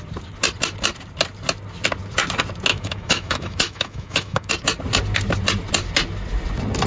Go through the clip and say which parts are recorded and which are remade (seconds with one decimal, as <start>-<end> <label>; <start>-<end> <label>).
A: 0.0-2.7 recorded; 2.7-4.5 remade; 4.5-6.9 recorded